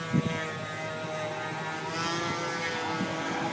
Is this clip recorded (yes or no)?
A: yes